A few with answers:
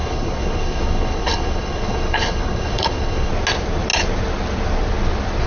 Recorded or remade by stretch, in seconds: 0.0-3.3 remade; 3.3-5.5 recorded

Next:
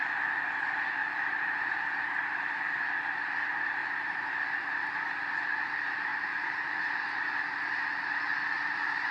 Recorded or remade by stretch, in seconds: 0.0-1.0 recorded; 1.0-2.0 remade; 2.0-3.8 recorded; 3.8-4.3 remade; 4.3-6.1 recorded; 6.1-7.2 remade; 7.2-9.1 recorded

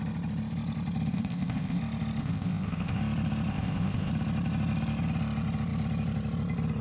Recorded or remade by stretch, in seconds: 0.0-1.1 recorded; 1.1-1.8 remade; 1.8-2.2 recorded; 2.2-3.0 remade; 3.0-3.5 recorded; 3.5-4.1 remade; 4.1-6.8 recorded

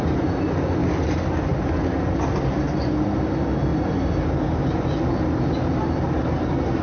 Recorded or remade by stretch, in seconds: 0.0-6.8 recorded

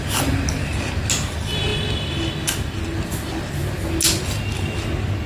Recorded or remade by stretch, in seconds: 0.0-5.3 recorded